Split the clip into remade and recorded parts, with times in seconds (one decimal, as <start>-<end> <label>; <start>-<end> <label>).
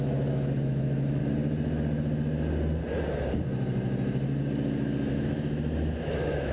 0.0-1.2 remade; 1.2-5.1 recorded; 5.1-6.5 remade